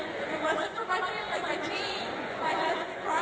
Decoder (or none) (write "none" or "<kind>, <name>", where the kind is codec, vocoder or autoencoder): vocoder, Vocos